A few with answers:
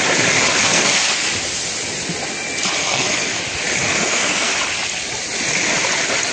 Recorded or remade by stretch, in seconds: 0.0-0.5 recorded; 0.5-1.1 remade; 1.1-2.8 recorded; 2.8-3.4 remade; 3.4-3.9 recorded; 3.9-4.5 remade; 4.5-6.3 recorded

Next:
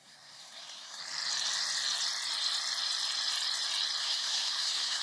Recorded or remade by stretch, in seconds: 0.0-1.0 remade; 1.0-4.0 recorded; 4.0-5.0 remade

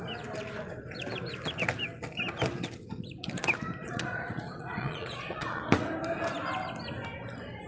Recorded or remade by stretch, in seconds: 0.0-3.8 recorded; 3.8-5.6 remade; 5.6-7.7 recorded